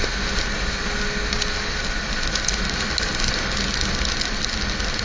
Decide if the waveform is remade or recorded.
recorded